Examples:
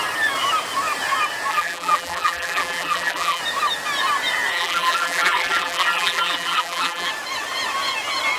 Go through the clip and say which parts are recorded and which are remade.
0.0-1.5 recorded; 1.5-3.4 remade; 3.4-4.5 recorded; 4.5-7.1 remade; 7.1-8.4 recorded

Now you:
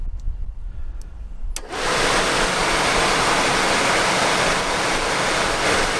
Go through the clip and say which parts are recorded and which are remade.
0.0-0.9 remade; 0.9-2.6 recorded; 2.6-6.0 remade

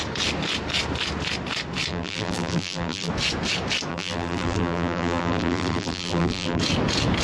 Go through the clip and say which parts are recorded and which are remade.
0.0-1.9 recorded; 1.9-3.1 remade; 3.1-3.9 recorded; 3.9-6.6 remade; 6.6-7.2 recorded

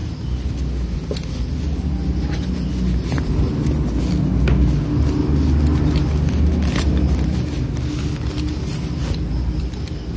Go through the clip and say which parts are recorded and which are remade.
0.0-10.2 recorded

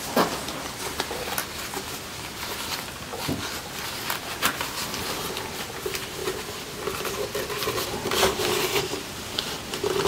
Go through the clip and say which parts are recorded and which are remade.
0.0-6.2 recorded; 6.2-8.8 remade; 8.8-10.1 recorded

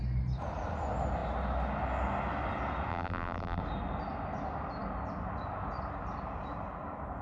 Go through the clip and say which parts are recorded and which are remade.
0.0-2.9 recorded; 2.9-3.6 remade; 3.6-7.2 recorded

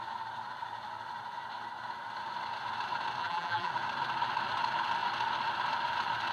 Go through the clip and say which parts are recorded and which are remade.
0.0-3.2 recorded; 3.2-3.7 remade; 3.7-6.3 recorded